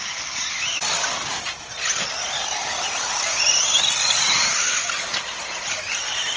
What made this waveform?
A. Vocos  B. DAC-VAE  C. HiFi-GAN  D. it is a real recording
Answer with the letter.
D